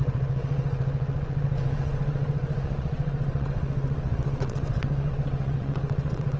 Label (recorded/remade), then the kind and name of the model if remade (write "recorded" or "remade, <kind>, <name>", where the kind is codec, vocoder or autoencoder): remade, vocoder, WaveNeXt